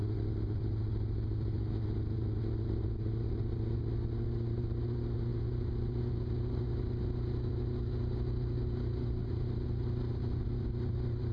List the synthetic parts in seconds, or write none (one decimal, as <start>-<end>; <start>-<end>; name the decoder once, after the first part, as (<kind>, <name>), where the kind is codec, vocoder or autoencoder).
none